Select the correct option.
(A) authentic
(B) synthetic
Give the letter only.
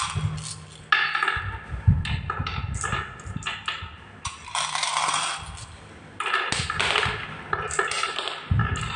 A